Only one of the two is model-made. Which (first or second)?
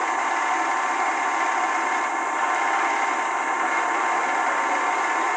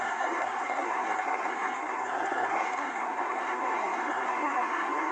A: second